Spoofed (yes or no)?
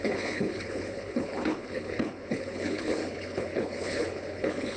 yes